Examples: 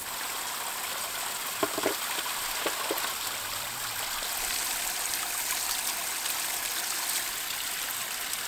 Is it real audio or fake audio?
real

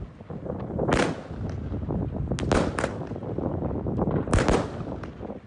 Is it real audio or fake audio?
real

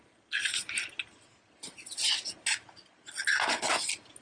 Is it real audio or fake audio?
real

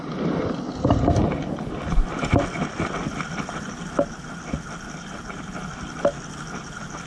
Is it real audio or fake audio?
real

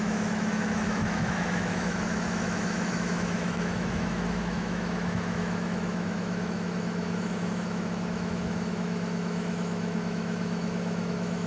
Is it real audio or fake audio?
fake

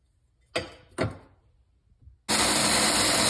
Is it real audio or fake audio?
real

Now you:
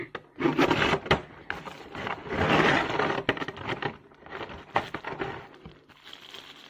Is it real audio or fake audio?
real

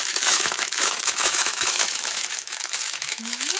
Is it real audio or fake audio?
fake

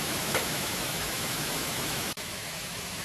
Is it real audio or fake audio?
fake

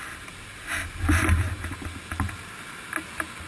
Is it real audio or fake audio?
real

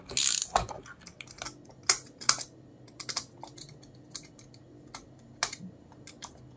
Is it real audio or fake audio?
real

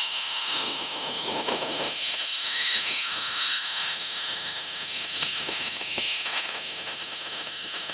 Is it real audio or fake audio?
fake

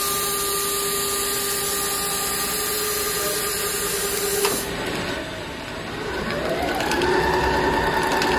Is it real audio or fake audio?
real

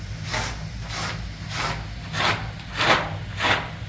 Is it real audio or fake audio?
real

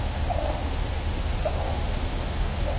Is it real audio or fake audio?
fake